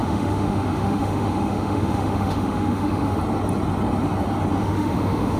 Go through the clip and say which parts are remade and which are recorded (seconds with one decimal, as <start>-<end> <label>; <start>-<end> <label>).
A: 0.0-3.2 remade; 3.2-4.6 recorded; 4.6-5.4 remade